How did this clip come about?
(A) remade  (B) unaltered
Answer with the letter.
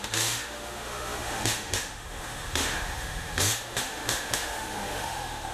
A